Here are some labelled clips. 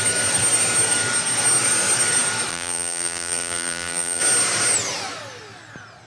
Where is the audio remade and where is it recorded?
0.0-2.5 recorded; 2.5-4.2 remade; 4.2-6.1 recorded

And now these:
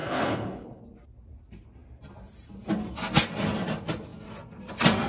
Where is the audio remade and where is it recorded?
0.0-0.8 remade; 0.8-5.1 recorded